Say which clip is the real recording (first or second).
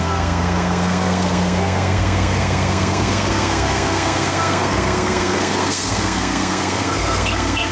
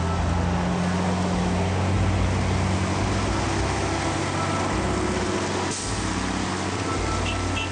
second